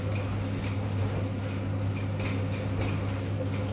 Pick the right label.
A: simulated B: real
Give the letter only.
B